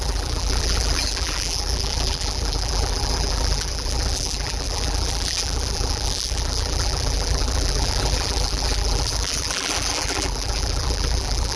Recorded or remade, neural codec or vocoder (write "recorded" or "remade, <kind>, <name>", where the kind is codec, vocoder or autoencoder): remade, vocoder, BigVGAN v2